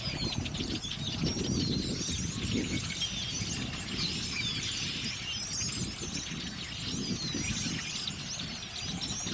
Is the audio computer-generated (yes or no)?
no